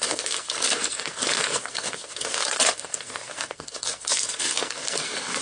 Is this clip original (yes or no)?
no